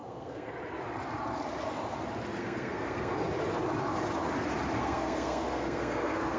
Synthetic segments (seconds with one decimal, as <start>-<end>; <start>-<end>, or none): 0.0-0.5; 2.4-3.1; 4.8-6.4